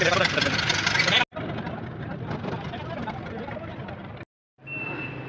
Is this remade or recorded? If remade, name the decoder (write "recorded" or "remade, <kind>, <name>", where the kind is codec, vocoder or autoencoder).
recorded